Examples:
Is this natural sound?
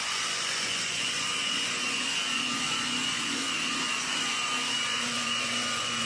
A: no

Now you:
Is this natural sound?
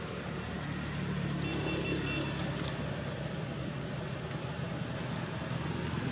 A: yes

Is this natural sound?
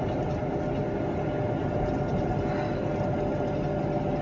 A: yes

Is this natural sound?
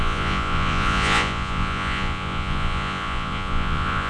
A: no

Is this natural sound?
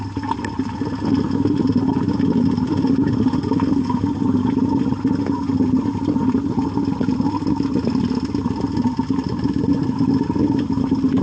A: yes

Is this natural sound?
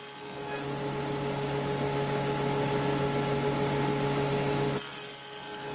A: yes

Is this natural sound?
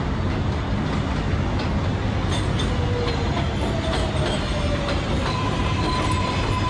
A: yes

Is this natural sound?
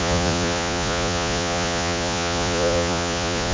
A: no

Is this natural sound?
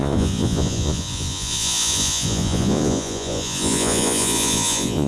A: no